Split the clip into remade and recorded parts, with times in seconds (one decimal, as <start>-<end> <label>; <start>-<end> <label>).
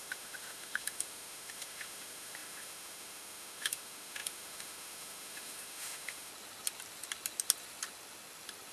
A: 0.0-6.3 remade; 6.3-8.7 recorded